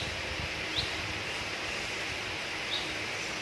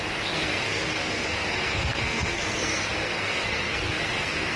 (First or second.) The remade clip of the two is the second